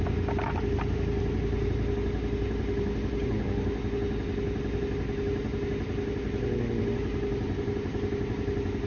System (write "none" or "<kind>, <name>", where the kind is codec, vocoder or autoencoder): none